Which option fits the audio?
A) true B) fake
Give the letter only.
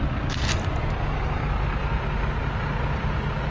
A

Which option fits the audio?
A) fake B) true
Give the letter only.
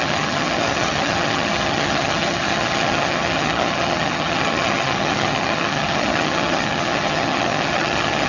A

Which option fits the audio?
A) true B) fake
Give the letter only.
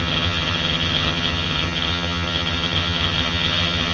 B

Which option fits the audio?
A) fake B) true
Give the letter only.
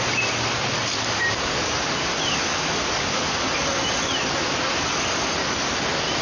B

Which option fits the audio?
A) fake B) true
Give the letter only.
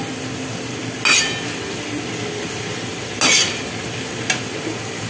B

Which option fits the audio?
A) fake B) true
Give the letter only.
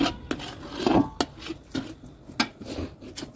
B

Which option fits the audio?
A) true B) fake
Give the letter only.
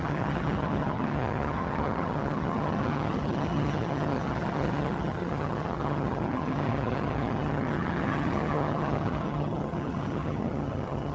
B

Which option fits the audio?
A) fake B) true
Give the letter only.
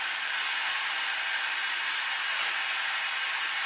B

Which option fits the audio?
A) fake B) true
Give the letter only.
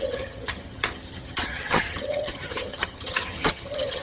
A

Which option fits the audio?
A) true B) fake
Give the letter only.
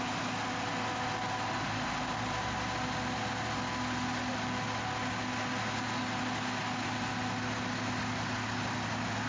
A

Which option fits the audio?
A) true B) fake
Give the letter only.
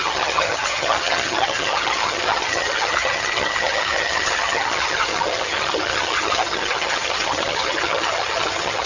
B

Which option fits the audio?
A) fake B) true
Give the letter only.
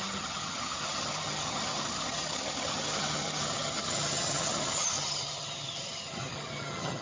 A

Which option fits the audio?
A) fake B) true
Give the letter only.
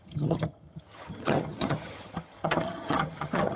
A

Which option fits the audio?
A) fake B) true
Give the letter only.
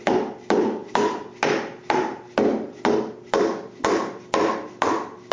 B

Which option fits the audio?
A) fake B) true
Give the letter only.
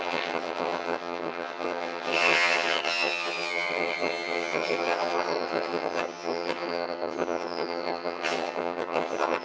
A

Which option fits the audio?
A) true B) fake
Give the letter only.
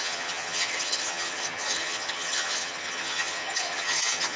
B